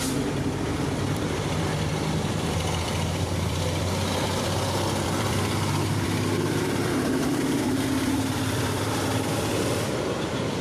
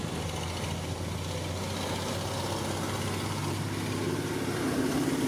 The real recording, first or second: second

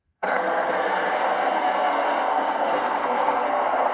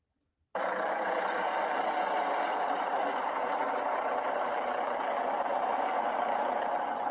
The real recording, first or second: second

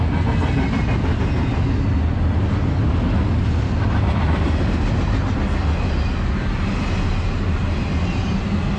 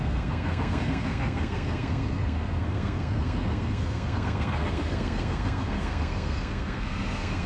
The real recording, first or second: first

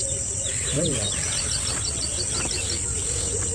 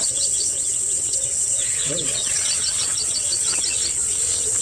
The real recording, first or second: first